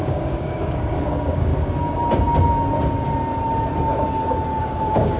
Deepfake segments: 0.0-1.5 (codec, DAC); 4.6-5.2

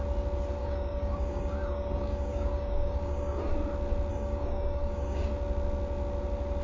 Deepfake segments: 0.6-3.5 (codec, DAC); 4.1-5.3

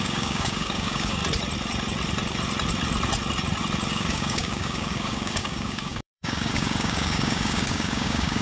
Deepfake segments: 0.0-1.2 (codec, DAC); 3.9-8.4

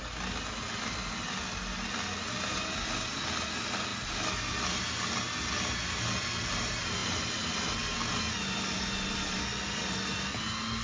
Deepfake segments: none

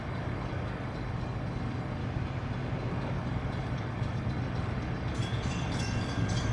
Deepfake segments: 0.0-2.0 (codec, DAC); 2.9-6.5